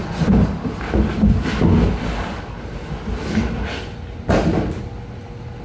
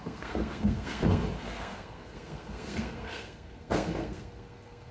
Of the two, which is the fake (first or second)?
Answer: second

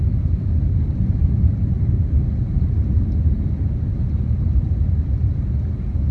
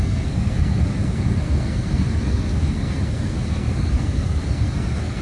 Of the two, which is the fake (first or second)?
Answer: second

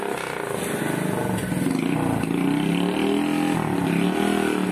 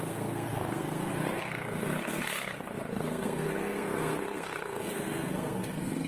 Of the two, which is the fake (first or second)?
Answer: second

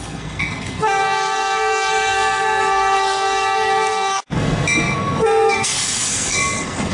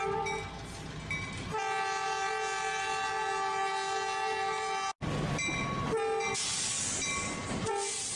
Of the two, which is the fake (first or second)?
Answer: first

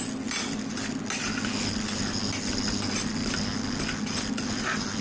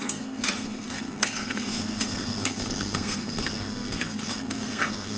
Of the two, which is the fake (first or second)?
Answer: second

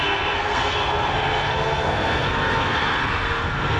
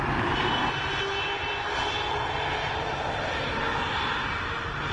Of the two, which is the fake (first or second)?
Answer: first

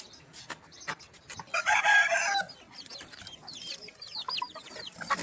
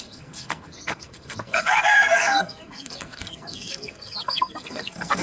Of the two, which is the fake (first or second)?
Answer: second